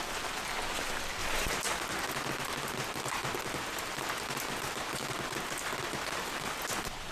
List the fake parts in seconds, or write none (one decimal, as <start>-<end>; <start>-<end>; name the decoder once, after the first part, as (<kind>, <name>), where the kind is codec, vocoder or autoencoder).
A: 1.2-1.8 (vocoder, BigVGAN v2)